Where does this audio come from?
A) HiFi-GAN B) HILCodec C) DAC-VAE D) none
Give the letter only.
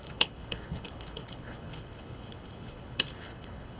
B